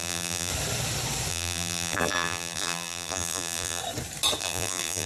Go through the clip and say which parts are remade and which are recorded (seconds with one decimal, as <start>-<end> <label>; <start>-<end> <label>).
0.0-0.5 remade; 0.5-1.3 recorded; 1.3-3.8 remade; 3.8-4.4 recorded; 4.4-5.1 remade